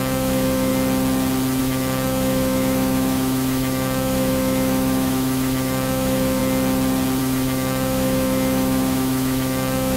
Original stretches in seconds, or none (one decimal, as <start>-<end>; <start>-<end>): 0.7-1.6; 6.4-7.2